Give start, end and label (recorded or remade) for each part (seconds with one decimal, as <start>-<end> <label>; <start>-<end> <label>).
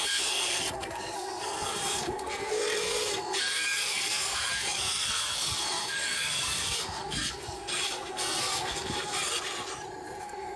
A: 0.0-9.3 remade; 9.3-10.2 recorded; 10.2-10.6 remade